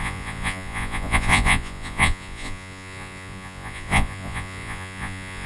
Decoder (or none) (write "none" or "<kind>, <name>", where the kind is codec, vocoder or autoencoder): vocoder, Vocos